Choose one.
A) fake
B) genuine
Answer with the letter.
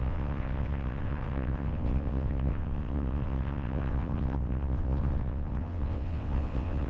A